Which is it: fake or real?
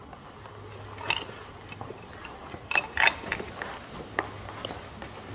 real